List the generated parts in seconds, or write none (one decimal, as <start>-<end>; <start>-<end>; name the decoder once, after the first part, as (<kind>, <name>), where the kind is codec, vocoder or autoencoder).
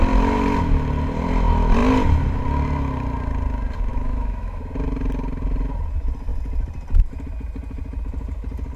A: 3.9-4.6 (autoencoder, DAC-VAE)